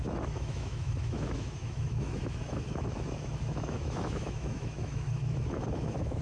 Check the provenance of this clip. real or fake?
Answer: fake